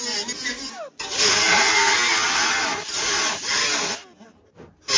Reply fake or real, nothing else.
real